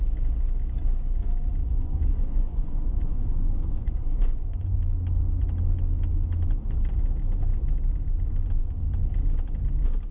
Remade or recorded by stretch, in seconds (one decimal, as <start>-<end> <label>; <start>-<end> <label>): 0.0-1.6 recorded; 1.6-4.8 remade; 4.8-10.1 recorded